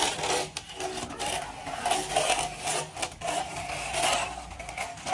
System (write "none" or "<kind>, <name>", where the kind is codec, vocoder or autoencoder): none